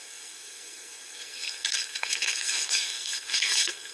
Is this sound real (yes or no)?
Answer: no